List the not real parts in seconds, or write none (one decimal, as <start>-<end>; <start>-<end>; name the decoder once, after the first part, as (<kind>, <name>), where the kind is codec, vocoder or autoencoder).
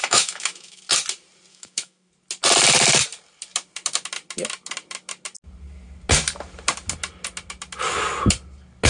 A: 0.0-0.8 (autoencoder, DAC-VAE); 1.5-2.1